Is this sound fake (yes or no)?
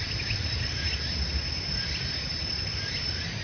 no